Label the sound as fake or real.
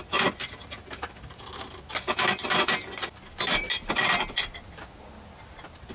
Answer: real